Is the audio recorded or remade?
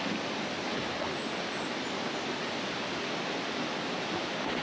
recorded